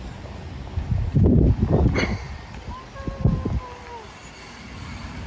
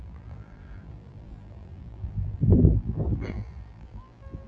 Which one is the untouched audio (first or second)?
first